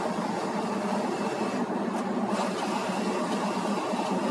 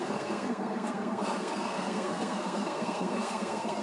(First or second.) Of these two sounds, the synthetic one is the second